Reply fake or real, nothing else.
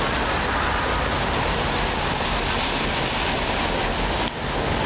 real